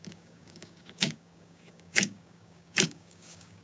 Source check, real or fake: fake